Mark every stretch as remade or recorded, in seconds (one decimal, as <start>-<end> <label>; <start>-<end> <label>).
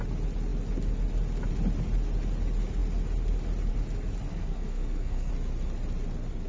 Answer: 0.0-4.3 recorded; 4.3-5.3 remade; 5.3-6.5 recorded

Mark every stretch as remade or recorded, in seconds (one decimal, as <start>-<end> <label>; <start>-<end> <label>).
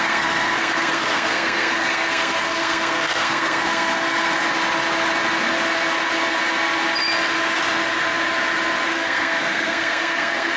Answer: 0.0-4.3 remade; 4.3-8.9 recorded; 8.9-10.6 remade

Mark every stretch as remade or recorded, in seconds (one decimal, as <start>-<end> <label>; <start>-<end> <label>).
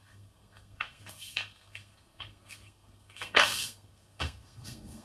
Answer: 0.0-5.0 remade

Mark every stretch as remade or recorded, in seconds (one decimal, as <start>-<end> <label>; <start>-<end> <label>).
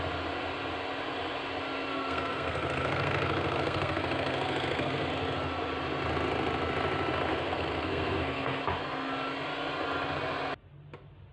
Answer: 0.0-1.9 recorded; 1.9-5.1 remade; 5.1-7.3 recorded; 7.3-8.6 remade; 8.6-11.3 recorded